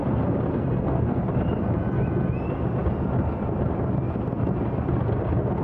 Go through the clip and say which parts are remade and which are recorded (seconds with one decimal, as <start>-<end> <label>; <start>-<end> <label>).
0.0-0.5 recorded; 0.5-1.2 remade; 1.2-5.6 recorded